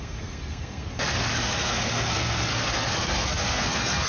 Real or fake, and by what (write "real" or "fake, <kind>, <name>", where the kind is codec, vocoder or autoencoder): fake, codec, SNAC